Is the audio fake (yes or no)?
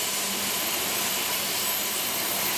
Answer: yes